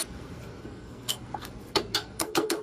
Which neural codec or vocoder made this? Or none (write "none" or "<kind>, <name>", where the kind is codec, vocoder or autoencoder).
codec, SNAC